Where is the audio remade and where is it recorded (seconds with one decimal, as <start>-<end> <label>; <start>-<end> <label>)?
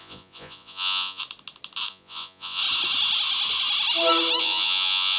0.0-1.2 remade; 1.2-1.9 recorded; 1.9-2.6 remade; 2.6-4.4 recorded; 4.4-5.2 remade